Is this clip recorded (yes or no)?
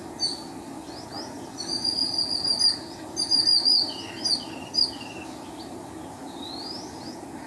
yes